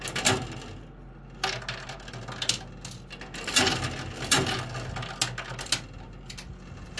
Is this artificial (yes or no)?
no